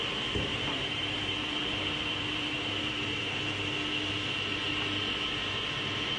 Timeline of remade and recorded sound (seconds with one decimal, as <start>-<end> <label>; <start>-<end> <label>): 0.0-0.5 recorded; 0.5-3.3 remade; 3.3-6.2 recorded